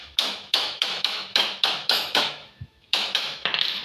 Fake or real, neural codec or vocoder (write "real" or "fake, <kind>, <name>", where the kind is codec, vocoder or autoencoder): fake, autoencoder, DAC-VAE